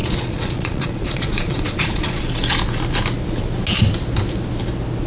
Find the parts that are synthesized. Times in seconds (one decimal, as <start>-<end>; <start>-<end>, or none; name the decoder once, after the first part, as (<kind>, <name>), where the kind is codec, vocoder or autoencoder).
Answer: 0.0-2.2 (vocoder, Vocos)